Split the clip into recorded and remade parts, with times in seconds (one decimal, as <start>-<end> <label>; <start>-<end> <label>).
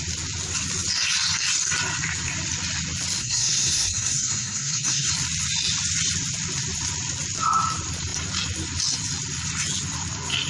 0.0-3.2 recorded; 3.2-5.1 remade; 5.1-10.5 recorded